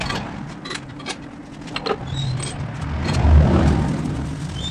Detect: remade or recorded recorded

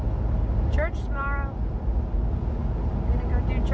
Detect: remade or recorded recorded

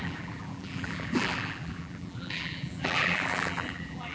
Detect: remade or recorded remade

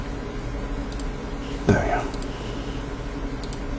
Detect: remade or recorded recorded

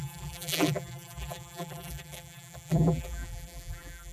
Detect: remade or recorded remade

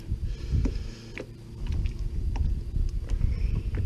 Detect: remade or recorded remade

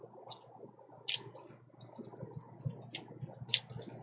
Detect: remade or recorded recorded